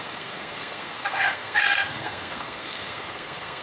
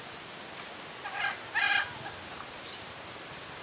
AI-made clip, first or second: first